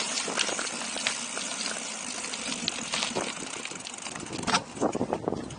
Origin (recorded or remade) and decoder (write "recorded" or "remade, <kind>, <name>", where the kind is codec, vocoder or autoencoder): recorded